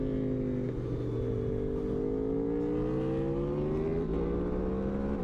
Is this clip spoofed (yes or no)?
no